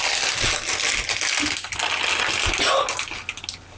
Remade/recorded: recorded